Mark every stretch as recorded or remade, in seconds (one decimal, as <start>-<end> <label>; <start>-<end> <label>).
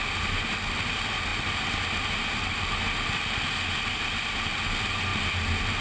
0.0-5.8 recorded